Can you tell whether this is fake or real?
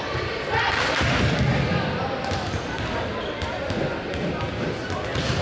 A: real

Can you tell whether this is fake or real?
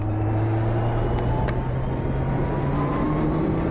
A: real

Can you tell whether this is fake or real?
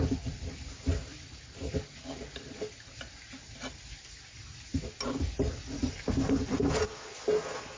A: real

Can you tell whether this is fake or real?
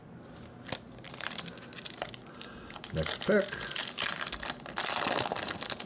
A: real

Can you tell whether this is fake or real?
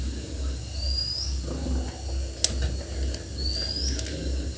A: real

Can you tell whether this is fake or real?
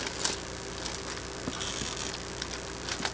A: real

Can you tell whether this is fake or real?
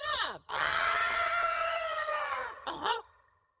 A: fake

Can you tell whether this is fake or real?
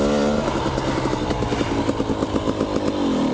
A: real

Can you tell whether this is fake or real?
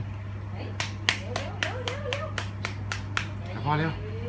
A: real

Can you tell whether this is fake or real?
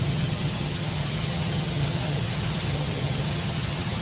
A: fake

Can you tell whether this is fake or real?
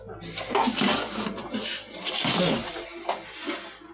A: real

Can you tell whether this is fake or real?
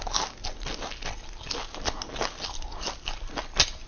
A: real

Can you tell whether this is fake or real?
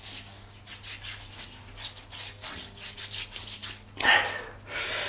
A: real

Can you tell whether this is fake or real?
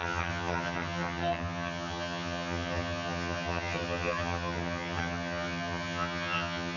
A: fake